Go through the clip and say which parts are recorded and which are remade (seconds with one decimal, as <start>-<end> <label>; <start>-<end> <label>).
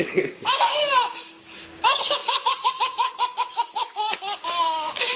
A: 0.0-5.2 remade